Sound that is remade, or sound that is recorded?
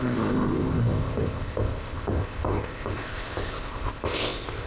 remade